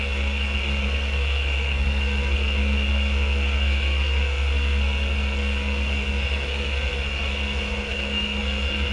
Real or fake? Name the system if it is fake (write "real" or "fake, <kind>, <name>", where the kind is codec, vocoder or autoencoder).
fake, codec, SNAC